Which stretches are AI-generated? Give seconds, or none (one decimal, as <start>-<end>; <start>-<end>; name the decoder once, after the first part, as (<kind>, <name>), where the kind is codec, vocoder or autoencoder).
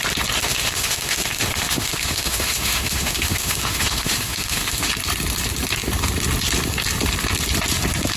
0.4-4.9 (autoencoder, DAC-VAE)